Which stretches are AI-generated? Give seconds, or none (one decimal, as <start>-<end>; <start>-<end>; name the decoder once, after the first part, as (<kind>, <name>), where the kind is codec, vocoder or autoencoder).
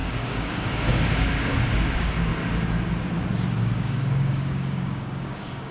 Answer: 0.0-2.3 (codec, DAC); 3.6-5.7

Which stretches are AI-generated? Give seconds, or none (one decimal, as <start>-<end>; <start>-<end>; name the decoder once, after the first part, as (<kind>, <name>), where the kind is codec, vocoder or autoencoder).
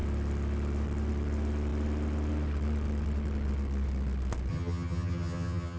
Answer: 4.5-5.8 (vocoder, HiFi-GAN)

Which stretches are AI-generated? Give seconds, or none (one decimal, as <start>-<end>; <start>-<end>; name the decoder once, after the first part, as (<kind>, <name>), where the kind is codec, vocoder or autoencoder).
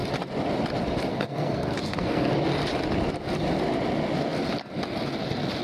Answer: 1.1-2.3 (codec, SNAC)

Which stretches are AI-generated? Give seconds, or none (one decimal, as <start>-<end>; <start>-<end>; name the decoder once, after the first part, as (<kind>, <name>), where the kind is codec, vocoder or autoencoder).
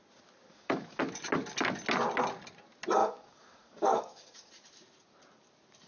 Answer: 0.5-1.0 (codec, DAC); 3.0-4.5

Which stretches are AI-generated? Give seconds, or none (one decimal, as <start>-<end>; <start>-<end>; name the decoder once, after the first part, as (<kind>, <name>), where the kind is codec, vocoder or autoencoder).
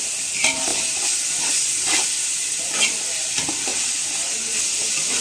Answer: none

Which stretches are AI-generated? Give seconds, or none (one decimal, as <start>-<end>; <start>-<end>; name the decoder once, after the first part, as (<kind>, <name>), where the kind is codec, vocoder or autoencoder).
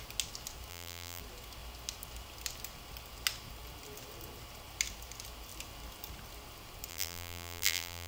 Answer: 0.7-1.2 (vocoder, BigVGAN v2); 6.9-8.1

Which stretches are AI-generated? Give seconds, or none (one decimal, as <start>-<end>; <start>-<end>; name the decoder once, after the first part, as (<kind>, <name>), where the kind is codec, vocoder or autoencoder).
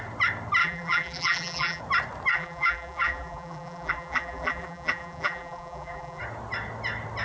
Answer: 0.6-1.8 (vocoder, BigVGAN v2); 2.3-6.2